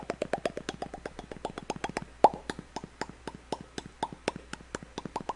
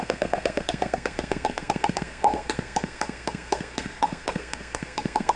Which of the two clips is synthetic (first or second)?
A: second